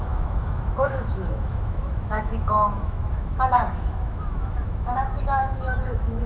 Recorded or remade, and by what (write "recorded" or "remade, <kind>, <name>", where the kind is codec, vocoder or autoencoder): remade, autoencoder, DAC-VAE